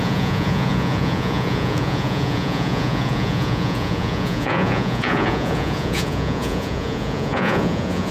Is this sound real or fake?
fake